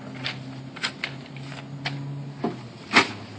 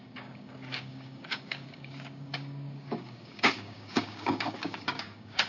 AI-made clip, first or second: second